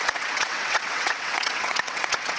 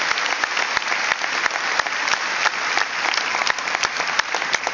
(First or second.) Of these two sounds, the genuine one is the second